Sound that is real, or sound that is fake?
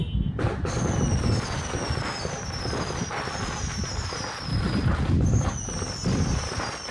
real